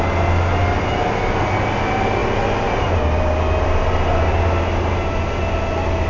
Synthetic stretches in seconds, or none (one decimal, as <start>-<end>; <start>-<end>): none